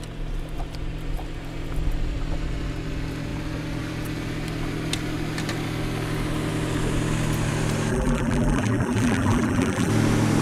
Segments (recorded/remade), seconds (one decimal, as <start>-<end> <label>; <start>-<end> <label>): 0.0-7.9 recorded; 7.9-9.9 remade; 9.9-10.4 recorded